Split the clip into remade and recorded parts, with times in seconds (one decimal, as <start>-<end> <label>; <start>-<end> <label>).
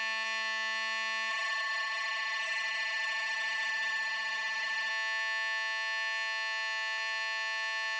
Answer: 0.0-1.3 recorded; 1.3-4.9 remade; 4.9-8.0 recorded